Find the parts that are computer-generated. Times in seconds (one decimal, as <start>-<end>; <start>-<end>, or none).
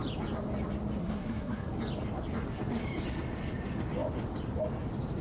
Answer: 1.0-1.7